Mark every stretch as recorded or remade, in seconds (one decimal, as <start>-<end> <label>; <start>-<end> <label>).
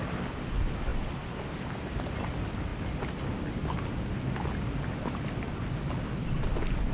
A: 0.0-6.9 recorded